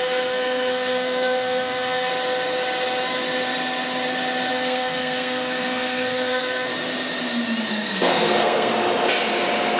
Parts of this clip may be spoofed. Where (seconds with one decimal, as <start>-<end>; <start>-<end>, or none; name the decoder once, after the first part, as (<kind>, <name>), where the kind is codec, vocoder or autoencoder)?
0.0-2.1 (codec, SNAC); 4.5-6.7; 7.7-8.7